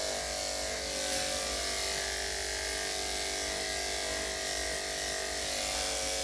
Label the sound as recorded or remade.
recorded